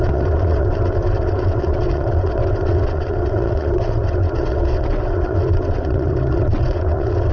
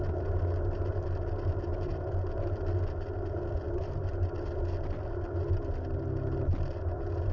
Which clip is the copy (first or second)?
first